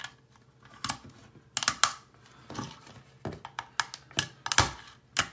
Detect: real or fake real